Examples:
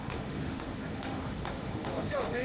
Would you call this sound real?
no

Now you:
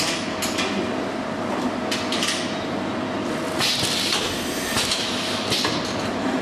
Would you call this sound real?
yes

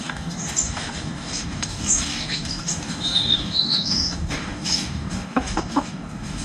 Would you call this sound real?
no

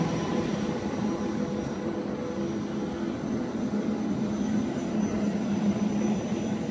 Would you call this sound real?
yes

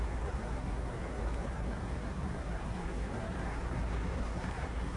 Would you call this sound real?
no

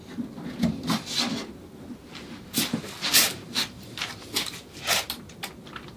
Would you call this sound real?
yes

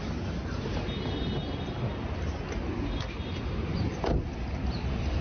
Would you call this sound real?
yes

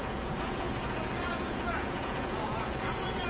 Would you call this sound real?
no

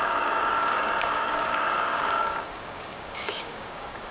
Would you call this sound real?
no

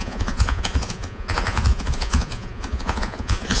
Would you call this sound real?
no